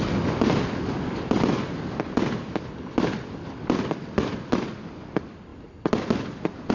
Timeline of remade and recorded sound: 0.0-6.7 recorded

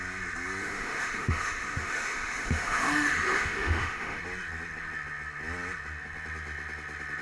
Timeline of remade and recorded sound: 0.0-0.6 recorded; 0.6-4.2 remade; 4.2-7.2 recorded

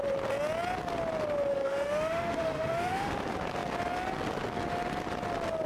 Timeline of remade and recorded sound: 0.0-1.5 recorded; 1.5-3.1 remade; 3.1-5.7 recorded

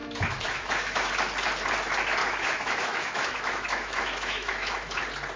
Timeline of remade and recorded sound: 0.0-1.1 remade; 1.1-2.2 recorded; 2.2-5.0 remade; 5.0-5.4 recorded

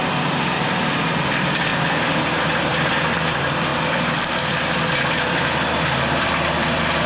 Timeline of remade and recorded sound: 0.0-7.1 recorded